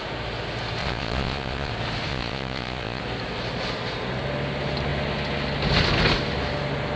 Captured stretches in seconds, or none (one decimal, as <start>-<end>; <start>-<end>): 0.0-0.8; 1.7-2.1; 3.0-7.0